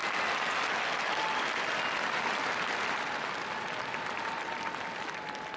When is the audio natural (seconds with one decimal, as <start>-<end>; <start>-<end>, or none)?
0.0-5.6